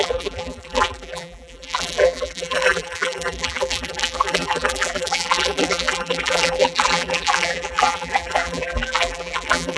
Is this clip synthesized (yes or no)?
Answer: yes